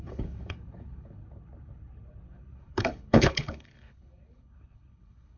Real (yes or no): no